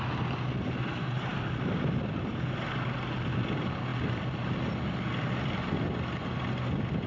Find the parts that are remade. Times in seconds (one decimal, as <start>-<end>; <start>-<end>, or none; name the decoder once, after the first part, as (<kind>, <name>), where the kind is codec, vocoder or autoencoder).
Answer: 1.3-2.3 (vocoder, BigVGAN v2)